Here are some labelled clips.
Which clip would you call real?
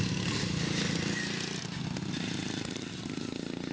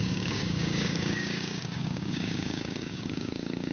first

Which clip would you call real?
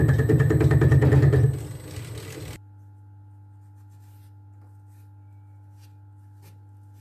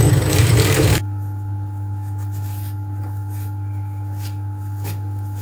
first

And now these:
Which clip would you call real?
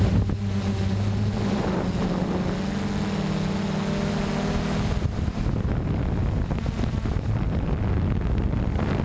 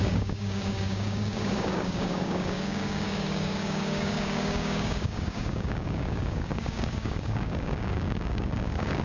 first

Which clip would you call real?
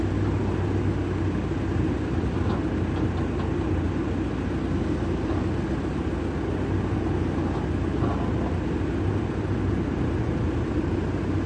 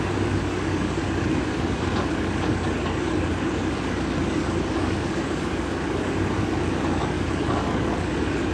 first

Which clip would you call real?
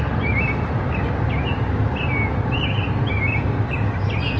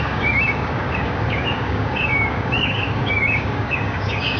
first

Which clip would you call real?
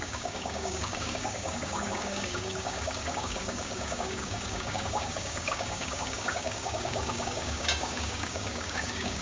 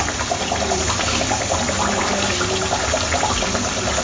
second